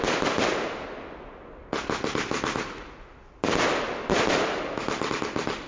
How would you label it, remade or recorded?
recorded